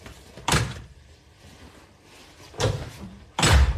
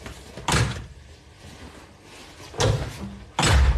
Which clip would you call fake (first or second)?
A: first